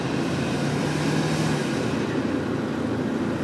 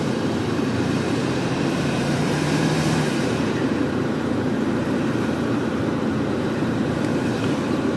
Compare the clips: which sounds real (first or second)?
first